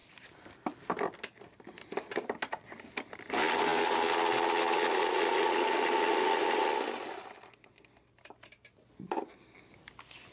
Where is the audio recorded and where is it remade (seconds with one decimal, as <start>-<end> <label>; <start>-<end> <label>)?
0.0-10.3 recorded